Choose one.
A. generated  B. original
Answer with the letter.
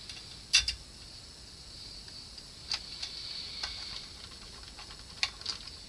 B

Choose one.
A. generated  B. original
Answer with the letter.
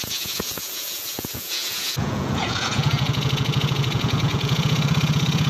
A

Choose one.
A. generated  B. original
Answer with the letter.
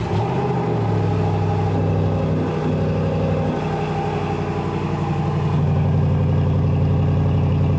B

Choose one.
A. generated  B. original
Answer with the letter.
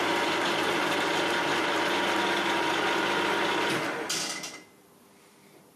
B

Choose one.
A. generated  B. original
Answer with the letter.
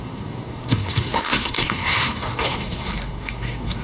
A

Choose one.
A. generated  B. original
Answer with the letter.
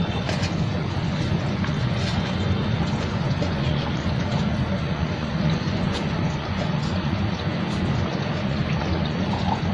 A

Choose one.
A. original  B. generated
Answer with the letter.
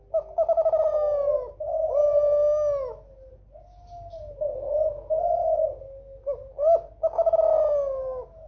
A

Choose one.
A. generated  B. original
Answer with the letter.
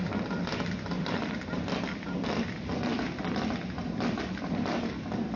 A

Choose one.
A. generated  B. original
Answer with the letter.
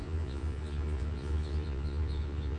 A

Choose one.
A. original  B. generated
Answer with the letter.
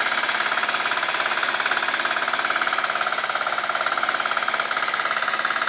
A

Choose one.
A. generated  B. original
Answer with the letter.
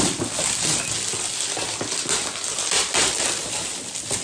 B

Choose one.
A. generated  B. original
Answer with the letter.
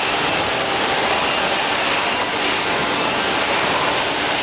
B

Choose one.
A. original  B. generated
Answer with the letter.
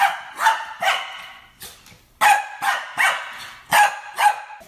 A